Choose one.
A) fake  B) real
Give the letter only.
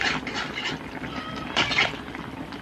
A